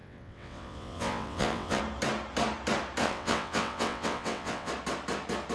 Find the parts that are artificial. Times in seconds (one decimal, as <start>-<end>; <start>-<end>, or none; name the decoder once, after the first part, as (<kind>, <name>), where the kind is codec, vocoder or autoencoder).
0.0-1.8 (vocoder, WaveNeXt); 3.0-4.7